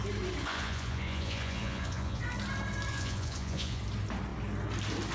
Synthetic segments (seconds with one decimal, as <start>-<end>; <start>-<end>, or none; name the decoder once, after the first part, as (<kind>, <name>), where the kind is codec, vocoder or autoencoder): 0.4-2.2 (vocoder, Vocos); 2.9-3.8